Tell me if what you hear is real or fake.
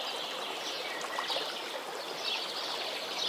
real